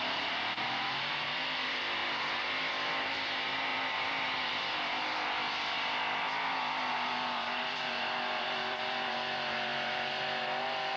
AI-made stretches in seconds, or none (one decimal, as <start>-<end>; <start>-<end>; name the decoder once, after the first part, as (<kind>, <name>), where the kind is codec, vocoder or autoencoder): 0.0-2.0 (vocoder, BigVGAN v2); 2.7-9.7